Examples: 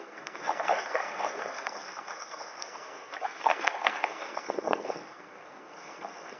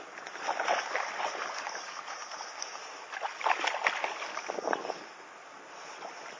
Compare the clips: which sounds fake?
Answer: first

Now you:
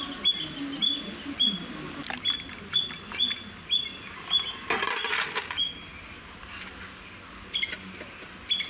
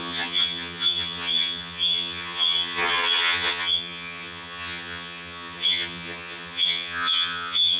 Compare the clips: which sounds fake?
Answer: second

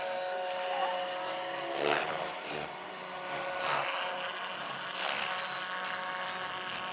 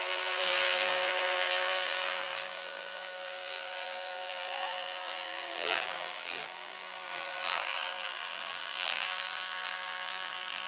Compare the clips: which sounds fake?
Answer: second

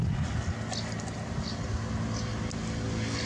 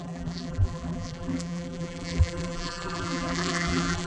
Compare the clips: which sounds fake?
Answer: second